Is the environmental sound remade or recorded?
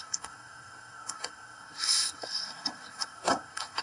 remade